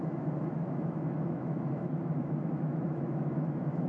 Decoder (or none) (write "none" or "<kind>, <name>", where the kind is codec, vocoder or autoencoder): autoencoder, DAC-VAE